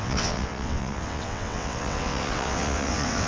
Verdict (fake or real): fake